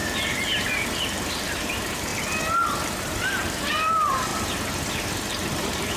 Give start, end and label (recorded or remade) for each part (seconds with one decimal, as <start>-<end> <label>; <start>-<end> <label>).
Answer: 0.0-2.1 remade; 2.1-3.0 recorded; 3.0-4.3 remade; 4.3-5.3 recorded; 5.3-6.0 remade